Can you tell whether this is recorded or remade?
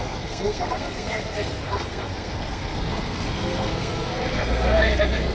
remade